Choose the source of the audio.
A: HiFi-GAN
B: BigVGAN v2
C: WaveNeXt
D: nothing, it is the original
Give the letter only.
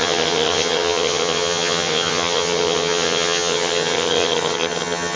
A